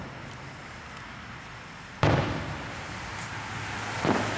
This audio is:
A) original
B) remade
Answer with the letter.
A